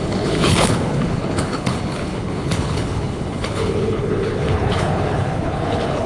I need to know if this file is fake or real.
fake